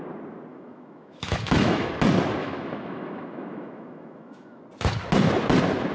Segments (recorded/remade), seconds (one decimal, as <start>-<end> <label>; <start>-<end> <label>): 0.0-0.5 recorded; 0.5-1.9 remade; 1.9-2.4 recorded; 2.4-4.6 remade; 4.6-5.9 recorded